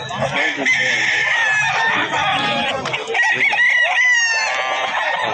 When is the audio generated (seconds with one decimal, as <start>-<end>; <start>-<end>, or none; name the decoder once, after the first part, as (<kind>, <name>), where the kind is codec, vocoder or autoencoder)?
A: none